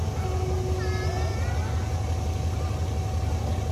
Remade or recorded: recorded